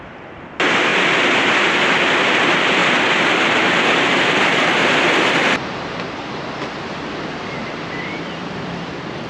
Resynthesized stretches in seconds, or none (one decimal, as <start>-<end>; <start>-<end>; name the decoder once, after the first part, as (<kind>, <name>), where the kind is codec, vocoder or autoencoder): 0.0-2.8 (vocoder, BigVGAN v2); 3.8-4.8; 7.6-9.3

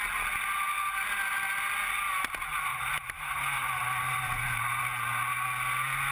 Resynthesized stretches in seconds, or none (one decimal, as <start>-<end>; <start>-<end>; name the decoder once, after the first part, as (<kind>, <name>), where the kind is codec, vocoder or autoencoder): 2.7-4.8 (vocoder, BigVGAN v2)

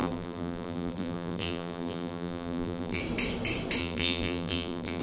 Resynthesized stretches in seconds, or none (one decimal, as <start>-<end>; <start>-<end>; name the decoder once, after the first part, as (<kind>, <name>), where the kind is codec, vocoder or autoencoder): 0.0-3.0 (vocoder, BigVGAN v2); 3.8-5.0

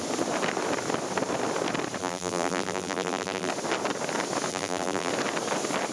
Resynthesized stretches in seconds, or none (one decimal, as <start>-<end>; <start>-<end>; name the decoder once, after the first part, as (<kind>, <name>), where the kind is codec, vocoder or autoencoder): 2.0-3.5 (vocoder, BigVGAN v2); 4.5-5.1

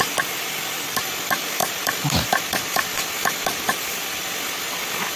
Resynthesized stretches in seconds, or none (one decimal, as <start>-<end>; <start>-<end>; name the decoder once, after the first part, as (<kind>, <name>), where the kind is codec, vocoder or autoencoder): 1.6-2.4 (vocoder, BigVGAN v2)

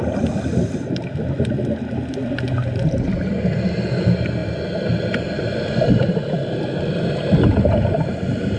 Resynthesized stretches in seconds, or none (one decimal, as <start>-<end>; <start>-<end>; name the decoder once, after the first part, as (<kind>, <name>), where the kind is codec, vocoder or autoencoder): none